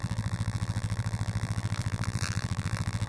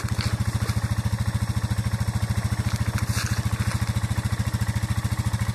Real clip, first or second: second